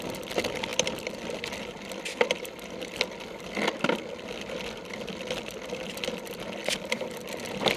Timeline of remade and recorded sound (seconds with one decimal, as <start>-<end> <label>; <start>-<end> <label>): 0.0-7.8 recorded